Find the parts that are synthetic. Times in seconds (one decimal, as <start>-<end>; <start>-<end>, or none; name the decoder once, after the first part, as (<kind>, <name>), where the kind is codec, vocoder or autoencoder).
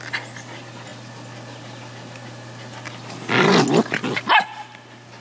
none